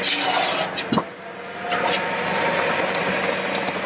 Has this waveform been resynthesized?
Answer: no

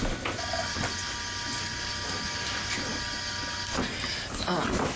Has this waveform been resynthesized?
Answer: no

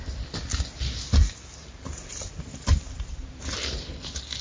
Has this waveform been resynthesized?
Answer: no